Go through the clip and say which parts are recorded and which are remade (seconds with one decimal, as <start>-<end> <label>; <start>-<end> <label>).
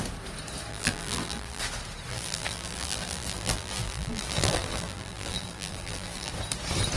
0.0-0.7 recorded; 0.7-1.6 remade; 1.6-2.1 recorded; 2.1-6.3 remade; 6.3-7.0 recorded